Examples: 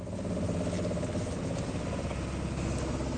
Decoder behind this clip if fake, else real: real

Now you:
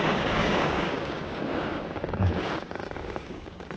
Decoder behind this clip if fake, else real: fake, codec, DAC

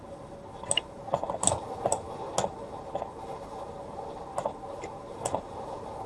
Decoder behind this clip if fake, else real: real